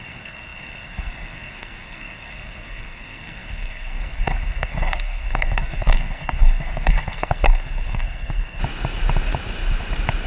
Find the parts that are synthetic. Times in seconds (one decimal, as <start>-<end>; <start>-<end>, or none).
0.0-8.6